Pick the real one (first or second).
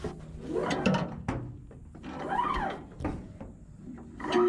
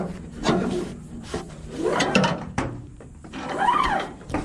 first